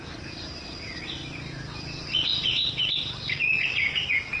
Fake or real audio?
real